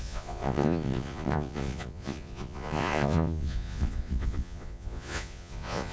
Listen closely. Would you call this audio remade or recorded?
remade